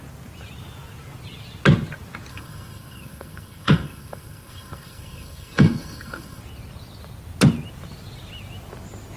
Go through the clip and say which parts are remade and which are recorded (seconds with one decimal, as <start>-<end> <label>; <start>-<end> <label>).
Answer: 0.0-2.3 recorded; 2.3-6.4 remade; 6.4-9.2 recorded